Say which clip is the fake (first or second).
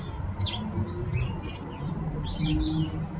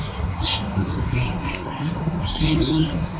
second